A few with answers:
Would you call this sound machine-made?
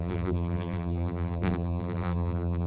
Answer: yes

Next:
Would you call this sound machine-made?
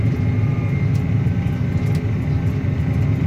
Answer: no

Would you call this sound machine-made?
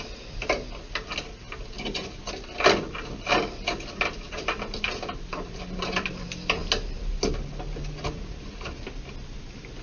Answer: no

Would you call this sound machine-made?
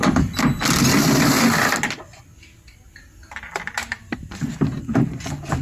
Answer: no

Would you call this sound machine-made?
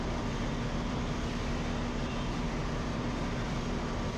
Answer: yes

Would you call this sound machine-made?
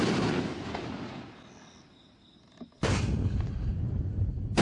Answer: no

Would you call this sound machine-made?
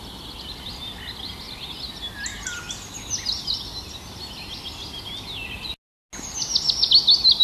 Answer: no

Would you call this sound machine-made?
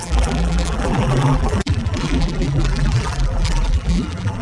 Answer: yes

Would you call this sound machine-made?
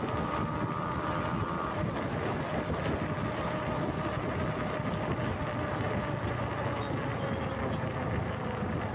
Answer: no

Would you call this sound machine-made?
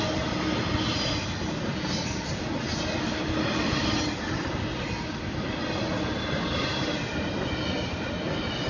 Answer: no